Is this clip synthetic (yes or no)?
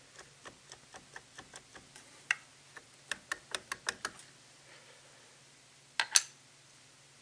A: no